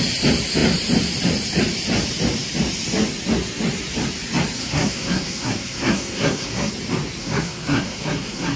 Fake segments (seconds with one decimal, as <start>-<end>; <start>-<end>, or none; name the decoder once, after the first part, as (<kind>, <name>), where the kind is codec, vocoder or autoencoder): 4.6-6.7 (codec, SNAC); 7.2-8.6